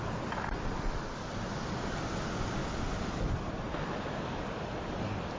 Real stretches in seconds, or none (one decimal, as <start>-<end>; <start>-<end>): 0.0-5.4